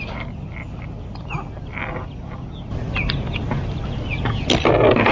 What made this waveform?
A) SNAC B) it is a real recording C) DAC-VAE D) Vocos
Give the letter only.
B